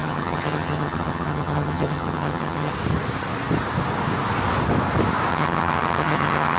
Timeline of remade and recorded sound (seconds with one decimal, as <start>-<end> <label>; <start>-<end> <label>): 0.0-2.7 remade; 2.7-5.3 recorded; 5.3-6.6 remade